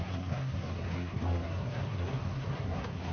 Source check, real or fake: fake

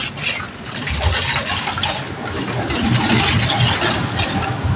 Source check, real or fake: real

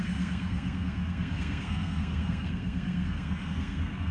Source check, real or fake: fake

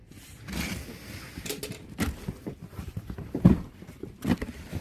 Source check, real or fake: real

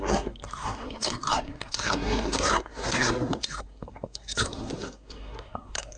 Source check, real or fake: fake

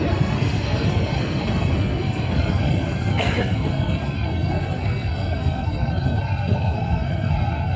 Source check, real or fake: fake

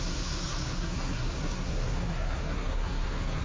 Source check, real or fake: fake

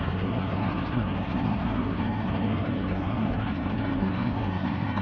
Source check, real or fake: fake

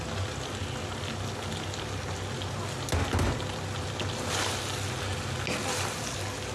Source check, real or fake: real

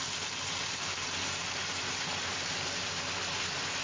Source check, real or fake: real